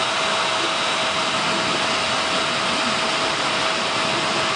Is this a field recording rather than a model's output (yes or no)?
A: yes